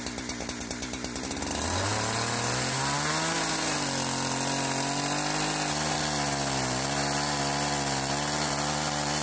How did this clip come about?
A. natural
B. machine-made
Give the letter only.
A